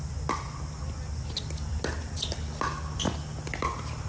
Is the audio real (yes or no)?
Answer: yes